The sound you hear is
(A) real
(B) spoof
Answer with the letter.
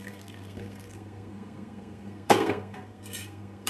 B